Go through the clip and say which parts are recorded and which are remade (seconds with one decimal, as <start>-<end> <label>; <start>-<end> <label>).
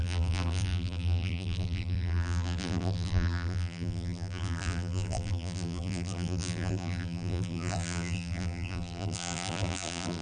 0.0-10.2 remade